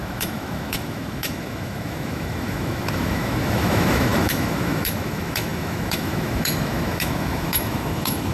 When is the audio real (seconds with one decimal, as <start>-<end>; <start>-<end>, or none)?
none